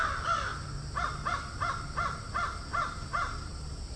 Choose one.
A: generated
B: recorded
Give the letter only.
B